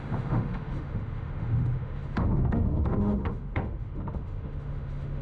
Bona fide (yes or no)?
no